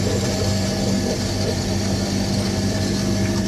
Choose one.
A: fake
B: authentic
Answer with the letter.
A